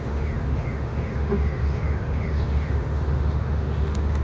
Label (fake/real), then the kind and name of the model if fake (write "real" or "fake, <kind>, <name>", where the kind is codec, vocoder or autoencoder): fake, autoencoder, DAC-VAE